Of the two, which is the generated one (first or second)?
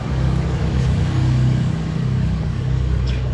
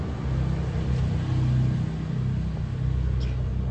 first